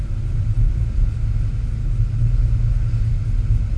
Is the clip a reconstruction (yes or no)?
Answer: no